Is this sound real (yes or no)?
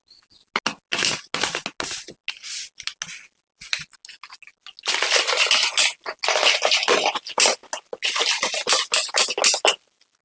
yes